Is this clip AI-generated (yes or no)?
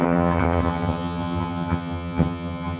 yes